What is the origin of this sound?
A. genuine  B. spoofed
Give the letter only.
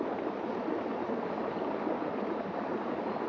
A